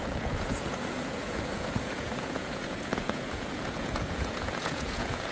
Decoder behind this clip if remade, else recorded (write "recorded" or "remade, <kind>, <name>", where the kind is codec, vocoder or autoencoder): remade, vocoder, Vocos